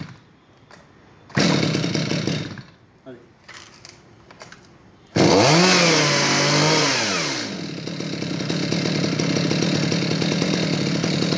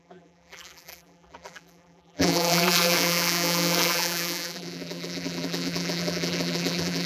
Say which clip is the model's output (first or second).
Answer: second